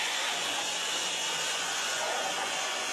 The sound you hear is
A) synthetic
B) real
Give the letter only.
A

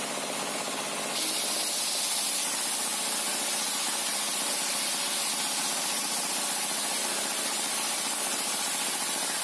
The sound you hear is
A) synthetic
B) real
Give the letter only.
B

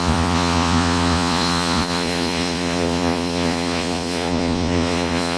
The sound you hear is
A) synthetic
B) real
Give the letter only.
A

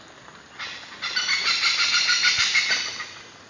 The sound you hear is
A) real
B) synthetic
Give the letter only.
A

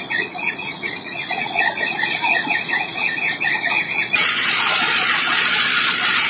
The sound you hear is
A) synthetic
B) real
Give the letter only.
A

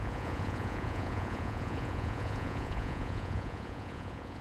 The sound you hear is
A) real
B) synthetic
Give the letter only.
B